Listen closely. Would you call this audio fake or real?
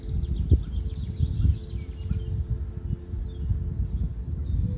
real